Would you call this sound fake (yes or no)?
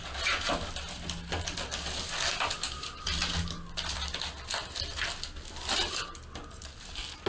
no